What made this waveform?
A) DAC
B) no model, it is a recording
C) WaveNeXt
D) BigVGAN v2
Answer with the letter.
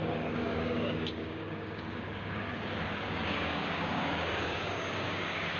A